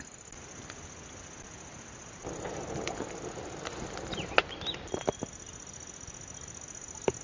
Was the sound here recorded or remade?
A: recorded